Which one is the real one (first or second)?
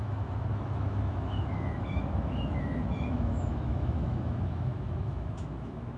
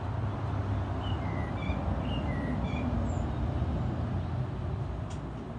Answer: second